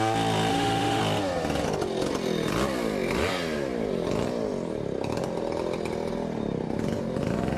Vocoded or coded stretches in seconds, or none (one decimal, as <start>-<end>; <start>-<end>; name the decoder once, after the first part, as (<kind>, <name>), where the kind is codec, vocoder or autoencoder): 0.5-1.0 (autoencoder, DAC-VAE)